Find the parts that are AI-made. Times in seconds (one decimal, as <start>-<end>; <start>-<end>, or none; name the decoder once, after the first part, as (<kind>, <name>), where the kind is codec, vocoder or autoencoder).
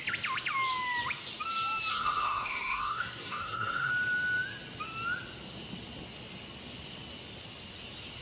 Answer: 1.9-3.9 (codec, SNAC)